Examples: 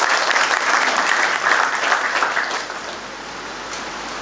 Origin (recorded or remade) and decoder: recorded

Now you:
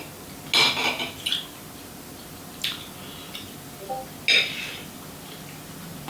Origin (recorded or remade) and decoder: recorded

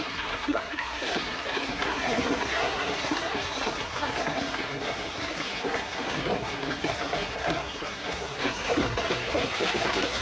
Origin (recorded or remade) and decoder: remade, codec, SNAC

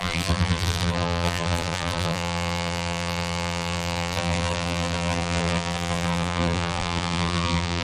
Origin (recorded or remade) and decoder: remade, vocoder, BigVGAN v2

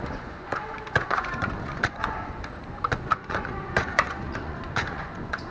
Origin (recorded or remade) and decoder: remade, vocoder, Vocos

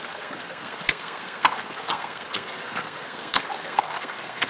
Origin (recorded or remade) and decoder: remade, codec, SNAC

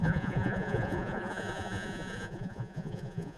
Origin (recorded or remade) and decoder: remade, vocoder, Vocos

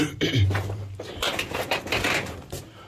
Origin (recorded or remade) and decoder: remade, vocoder, BigVGAN v2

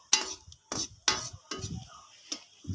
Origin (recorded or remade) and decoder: recorded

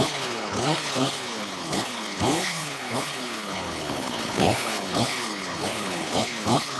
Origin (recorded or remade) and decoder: remade, codec, HILCodec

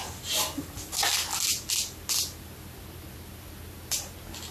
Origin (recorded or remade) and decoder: recorded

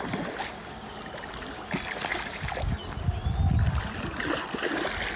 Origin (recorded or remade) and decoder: recorded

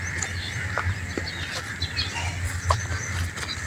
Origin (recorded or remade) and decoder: recorded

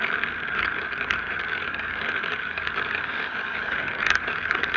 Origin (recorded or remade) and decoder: remade, codec, DAC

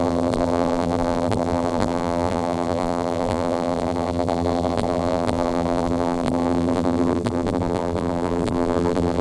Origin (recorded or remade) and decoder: remade, vocoder, BigVGAN v2